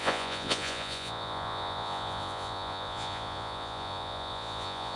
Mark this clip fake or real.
fake